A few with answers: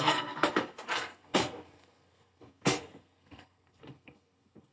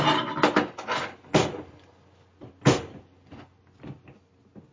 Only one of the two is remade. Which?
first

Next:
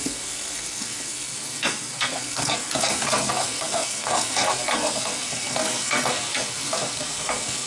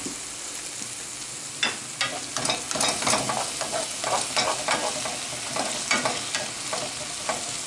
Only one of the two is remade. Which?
first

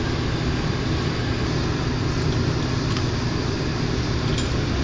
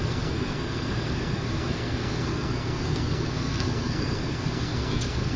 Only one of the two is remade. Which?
second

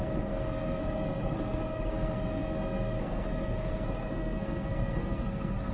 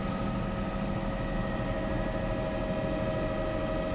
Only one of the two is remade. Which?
first